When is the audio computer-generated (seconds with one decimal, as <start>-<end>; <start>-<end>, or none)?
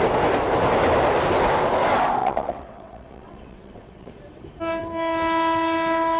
2.2-4.1